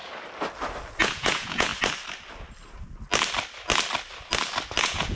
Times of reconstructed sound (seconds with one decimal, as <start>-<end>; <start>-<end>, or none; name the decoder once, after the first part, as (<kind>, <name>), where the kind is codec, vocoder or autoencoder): 1.0-1.7 (vocoder, Vocos); 4.8-5.2